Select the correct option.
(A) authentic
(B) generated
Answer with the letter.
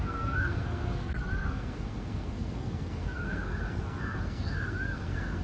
B